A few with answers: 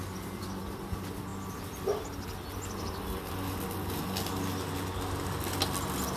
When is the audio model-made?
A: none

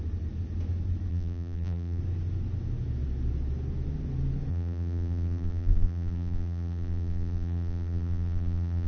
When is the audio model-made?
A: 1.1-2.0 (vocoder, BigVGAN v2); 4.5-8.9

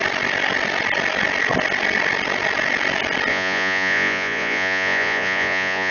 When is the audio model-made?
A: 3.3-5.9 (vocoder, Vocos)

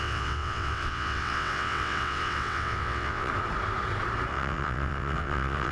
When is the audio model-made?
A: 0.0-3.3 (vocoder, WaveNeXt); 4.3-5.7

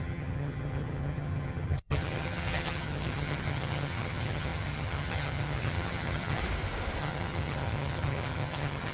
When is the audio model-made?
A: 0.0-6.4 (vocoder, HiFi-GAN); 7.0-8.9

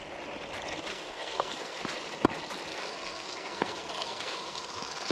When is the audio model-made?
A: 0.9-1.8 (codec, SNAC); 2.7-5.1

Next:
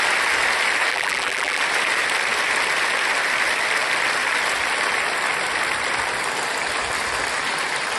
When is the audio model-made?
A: 0.9-1.6 (vocoder, BigVGAN v2)

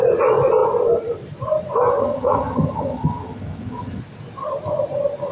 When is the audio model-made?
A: 2.0-4.0 (vocoder, HiFi-GAN)